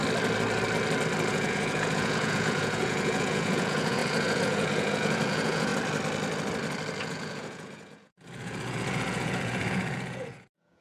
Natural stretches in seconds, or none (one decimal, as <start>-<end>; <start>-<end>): 0.0-1.3; 5.7-7.0